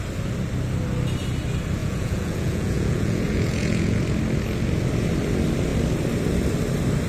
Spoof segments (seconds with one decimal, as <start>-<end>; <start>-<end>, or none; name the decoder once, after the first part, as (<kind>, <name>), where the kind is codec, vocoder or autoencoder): 1.8-4.0 (vocoder, Vocos)